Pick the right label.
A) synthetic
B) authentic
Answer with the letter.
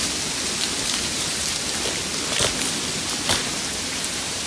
B